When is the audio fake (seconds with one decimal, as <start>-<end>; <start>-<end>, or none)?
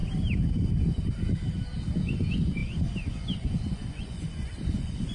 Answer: 2.0-5.1